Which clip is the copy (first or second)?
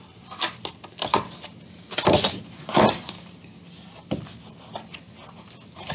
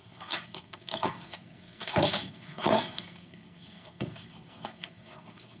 second